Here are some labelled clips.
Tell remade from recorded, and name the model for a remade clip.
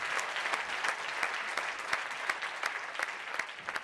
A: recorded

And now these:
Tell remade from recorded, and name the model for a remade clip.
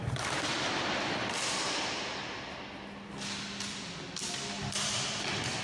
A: recorded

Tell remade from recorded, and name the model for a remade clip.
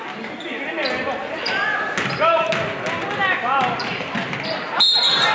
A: recorded